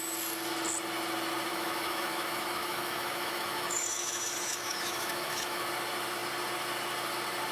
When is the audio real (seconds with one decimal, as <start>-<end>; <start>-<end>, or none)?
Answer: 0.0-1.5; 5.7-7.5